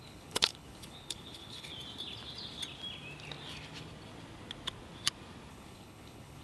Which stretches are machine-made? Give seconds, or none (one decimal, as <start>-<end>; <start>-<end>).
0.0-1.7; 5.5-6.4